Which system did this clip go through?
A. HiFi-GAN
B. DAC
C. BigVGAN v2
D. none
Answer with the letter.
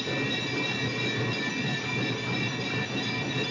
D